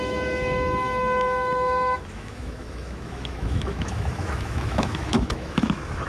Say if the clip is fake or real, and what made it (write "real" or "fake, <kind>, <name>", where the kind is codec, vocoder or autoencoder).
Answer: fake, autoencoder, DAC-VAE